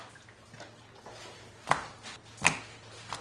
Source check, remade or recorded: recorded